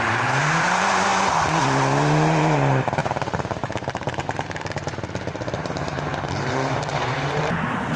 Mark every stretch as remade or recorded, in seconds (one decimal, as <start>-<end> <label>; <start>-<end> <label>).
0.0-8.0 remade